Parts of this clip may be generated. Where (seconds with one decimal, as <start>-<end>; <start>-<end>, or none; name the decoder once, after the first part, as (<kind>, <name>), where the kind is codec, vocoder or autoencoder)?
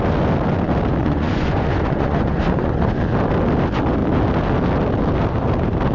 1.0-3.0 (vocoder, Vocos)